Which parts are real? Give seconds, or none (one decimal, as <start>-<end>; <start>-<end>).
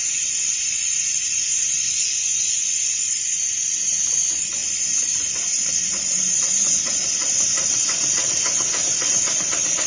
none